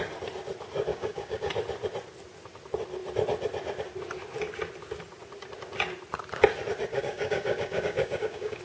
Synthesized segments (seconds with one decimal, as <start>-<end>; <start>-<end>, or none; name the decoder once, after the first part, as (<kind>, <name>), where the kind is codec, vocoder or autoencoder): 0.9-1.5 (codec, DAC); 6.9-8.6